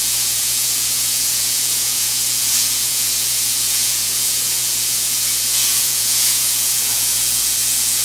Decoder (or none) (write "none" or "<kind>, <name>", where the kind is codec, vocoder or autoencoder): vocoder, Vocos